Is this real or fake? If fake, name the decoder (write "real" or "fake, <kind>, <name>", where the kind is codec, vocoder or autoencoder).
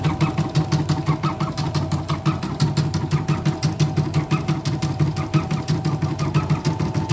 real